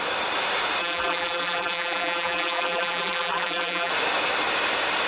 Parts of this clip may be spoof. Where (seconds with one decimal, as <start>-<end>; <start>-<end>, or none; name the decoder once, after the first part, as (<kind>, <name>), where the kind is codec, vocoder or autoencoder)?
0.8-3.9 (vocoder, BigVGAN v2)